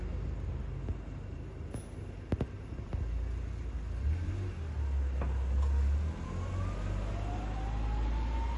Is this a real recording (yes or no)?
yes